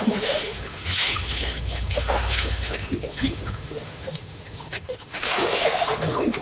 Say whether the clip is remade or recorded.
remade